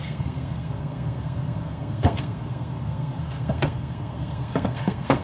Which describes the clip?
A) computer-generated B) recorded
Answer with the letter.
A